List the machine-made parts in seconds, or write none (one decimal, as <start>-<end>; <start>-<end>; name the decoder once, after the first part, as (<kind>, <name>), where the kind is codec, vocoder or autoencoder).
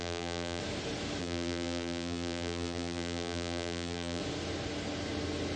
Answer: 0.0-0.6 (vocoder, BigVGAN v2); 1.2-4.2